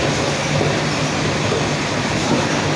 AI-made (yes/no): no